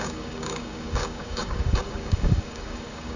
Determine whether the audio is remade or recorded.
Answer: remade